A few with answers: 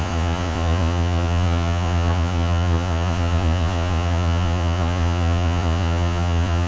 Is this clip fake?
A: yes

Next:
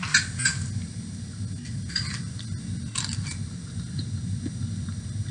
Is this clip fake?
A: no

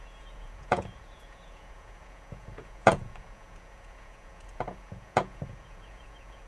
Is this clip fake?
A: yes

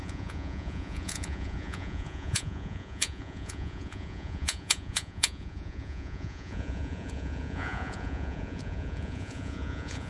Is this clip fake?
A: yes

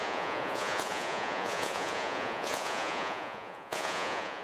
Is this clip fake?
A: yes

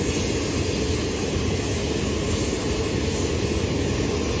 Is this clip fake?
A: no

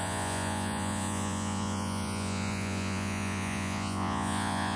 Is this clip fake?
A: yes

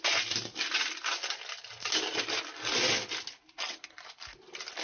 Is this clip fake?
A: no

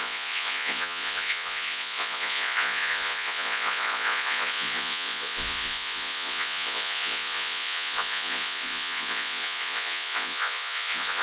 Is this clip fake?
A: yes